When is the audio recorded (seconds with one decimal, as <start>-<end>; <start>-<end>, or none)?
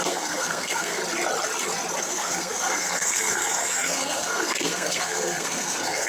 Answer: 1.0-2.0